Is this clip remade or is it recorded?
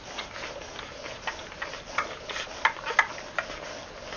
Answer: recorded